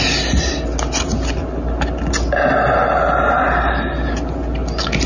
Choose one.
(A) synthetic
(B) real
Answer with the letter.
B